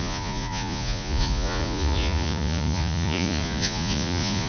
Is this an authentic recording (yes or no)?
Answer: no